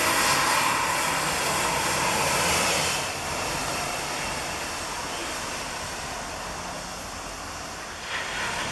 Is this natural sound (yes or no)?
yes